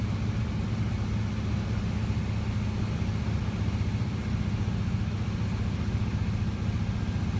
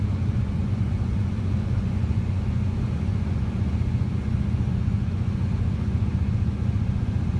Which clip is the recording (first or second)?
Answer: first